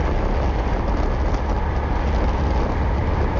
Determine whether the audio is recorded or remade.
recorded